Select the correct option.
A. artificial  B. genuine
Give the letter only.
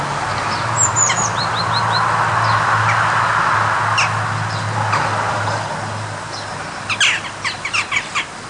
B